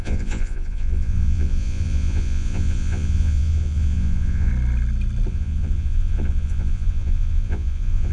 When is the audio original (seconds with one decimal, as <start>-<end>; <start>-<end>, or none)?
4.5-5.3